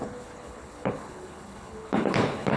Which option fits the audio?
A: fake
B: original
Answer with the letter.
A